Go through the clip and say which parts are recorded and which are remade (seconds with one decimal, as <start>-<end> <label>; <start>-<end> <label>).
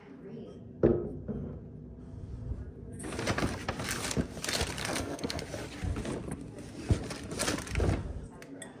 0.0-4.8 recorded; 4.8-5.4 remade; 5.4-8.8 recorded